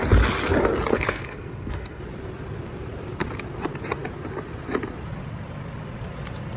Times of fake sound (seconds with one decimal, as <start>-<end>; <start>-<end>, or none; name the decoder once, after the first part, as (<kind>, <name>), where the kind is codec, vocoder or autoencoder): 0.9-2.0 (codec, SNAC)